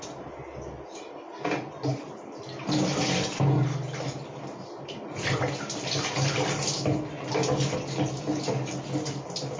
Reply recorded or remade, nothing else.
recorded